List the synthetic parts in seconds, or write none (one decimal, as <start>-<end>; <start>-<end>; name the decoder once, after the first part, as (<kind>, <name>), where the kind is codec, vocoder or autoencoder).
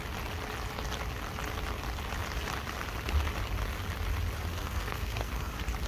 4.5-5.5 (codec, SNAC)